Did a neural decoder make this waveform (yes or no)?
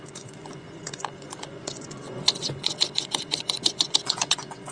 yes